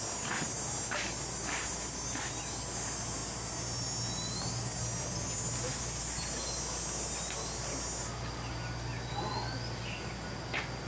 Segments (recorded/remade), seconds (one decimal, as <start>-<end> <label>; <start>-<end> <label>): 0.0-10.9 recorded